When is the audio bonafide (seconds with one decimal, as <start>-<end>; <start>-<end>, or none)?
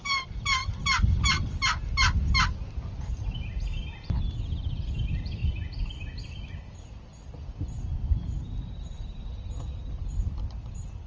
0.0-5.4; 6.4-10.0; 10.7-11.1